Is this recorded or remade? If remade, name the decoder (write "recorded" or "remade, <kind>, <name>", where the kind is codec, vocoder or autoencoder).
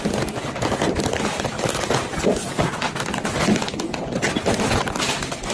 recorded